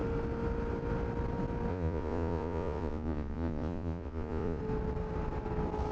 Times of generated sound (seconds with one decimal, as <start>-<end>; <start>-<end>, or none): 1.7-4.6